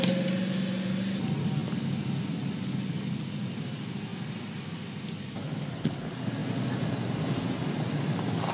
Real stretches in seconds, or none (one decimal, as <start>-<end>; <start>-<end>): 0.0-8.5